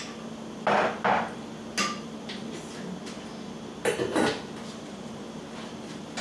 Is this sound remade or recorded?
recorded